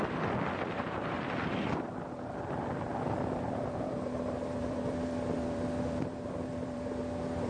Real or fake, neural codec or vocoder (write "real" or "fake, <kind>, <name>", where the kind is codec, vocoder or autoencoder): fake, vocoder, BigVGAN v2